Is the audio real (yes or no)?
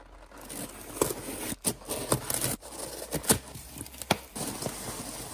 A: yes